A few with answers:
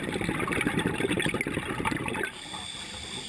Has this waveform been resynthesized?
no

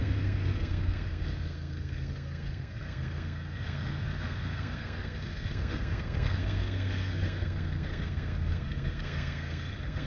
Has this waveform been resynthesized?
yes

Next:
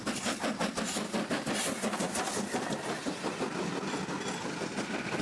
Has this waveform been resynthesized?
no